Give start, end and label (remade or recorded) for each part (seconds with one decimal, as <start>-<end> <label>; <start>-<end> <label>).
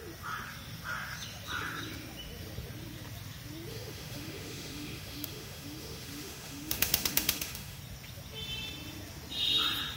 0.0-3.7 recorded; 3.7-7.8 remade; 7.8-10.0 recorded